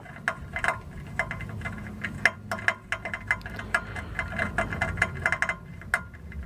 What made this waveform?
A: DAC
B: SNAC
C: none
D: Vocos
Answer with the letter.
C